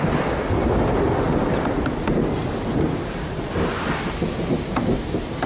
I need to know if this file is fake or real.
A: fake